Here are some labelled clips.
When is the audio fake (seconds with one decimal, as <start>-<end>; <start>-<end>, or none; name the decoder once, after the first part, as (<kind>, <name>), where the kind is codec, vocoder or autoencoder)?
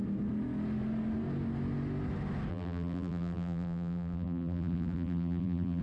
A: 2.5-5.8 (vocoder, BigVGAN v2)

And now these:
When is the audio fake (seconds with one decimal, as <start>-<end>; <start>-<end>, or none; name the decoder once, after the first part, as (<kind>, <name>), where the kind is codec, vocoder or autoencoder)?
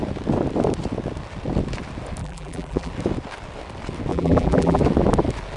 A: 2.2-2.9 (vocoder, BigVGAN v2); 4.1-4.8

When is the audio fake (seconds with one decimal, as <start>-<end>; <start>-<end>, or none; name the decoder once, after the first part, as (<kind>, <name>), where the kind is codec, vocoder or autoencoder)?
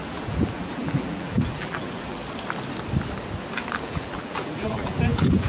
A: 0.0-2.2 (vocoder, BigVGAN v2); 3.8-5.5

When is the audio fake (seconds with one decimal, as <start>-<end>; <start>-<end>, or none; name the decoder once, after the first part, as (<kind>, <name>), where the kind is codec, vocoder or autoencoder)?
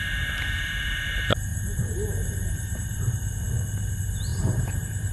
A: 1.5-3.3 (vocoder, BigVGAN v2); 4.3-5.1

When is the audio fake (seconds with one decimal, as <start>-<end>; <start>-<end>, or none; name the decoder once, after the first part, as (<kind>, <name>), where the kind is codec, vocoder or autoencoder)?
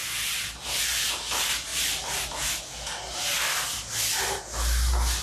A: 1.7-3.5 (vocoder, BigVGAN v2)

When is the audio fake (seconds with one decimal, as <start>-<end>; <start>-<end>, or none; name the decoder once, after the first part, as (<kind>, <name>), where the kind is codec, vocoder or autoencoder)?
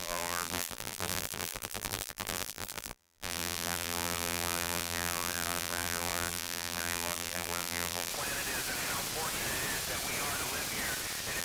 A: 0.0-8.1 (vocoder, BigVGAN v2)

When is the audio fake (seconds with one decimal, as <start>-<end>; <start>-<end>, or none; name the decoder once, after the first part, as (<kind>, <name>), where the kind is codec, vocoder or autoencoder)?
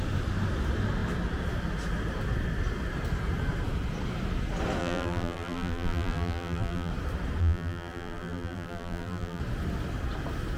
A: 4.8-6.9 (vocoder, BigVGAN v2); 7.4-9.4